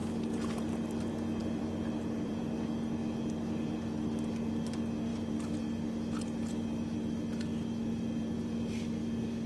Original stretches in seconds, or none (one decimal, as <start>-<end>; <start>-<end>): 0.6-1.4; 2.4-3.0; 4.5-5.1